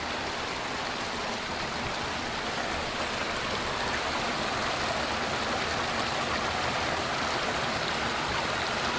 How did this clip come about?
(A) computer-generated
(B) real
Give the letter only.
B